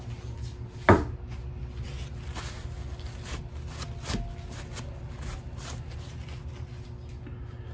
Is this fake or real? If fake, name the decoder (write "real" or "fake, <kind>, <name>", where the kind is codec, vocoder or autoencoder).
real